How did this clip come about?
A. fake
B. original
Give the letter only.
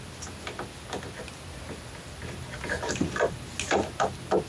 B